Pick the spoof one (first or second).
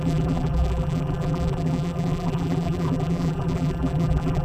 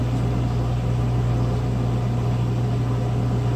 first